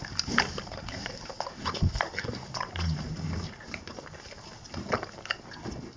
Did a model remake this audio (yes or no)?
no